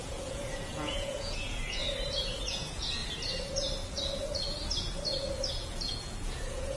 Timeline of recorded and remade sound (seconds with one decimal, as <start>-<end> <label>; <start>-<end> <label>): 0.0-1.8 remade; 1.8-2.5 recorded; 2.5-3.0 remade; 3.0-5.5 recorded; 5.5-6.8 remade